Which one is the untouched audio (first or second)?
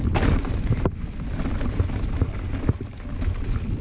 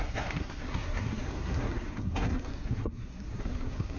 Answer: first